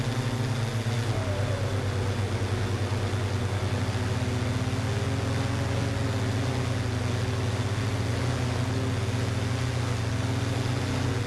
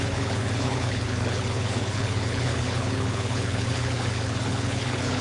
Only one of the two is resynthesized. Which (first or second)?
second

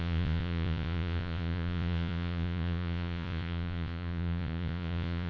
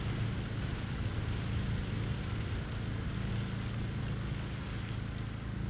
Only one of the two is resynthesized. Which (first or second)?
first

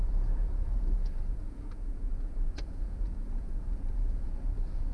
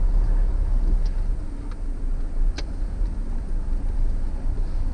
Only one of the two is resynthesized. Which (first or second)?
first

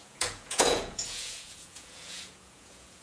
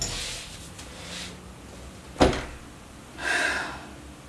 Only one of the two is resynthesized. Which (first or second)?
first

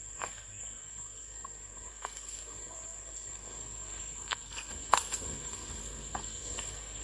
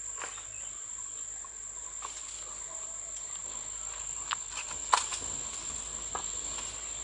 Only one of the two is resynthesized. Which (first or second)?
first